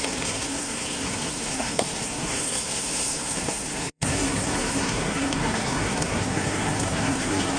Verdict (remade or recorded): remade